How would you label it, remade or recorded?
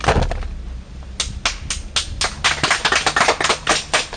recorded